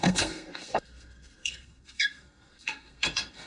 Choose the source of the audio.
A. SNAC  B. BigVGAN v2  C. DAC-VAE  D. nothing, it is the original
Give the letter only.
A